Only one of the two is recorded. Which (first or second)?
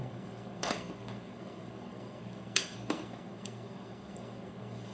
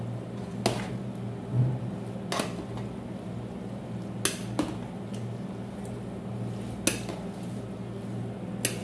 second